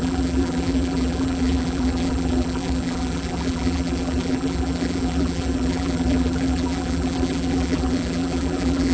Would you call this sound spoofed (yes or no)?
yes